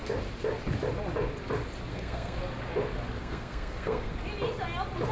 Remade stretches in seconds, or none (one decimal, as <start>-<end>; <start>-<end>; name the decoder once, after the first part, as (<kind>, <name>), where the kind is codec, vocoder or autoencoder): 1.9-2.4 (codec, SNAC); 3.2-4.1